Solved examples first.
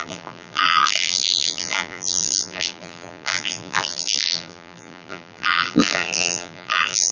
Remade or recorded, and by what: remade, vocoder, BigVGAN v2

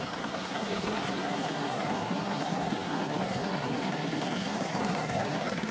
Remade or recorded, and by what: remade, codec, SNAC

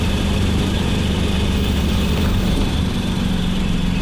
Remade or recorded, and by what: remade, vocoder, BigVGAN v2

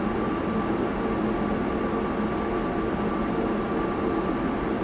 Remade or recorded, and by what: recorded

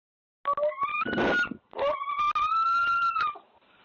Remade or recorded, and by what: recorded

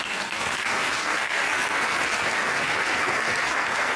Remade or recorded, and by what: remade, codec, SNAC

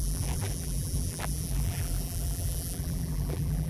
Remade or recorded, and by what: remade, vocoder, BigVGAN v2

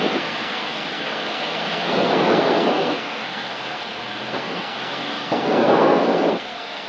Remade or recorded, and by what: remade, codec, SNAC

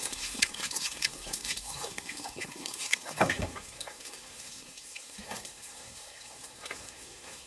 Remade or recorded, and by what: remade, codec, SNAC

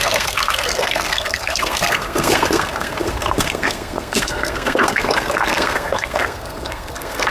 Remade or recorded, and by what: remade, codec, SNAC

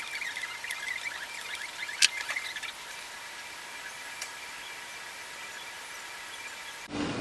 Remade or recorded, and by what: recorded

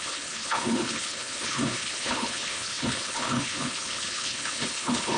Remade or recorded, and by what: remade, codec, HILCodec